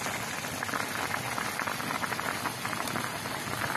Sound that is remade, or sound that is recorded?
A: recorded